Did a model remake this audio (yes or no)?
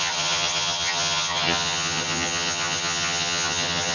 yes